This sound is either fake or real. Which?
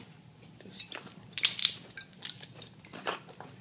real